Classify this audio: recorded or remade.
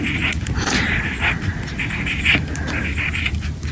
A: recorded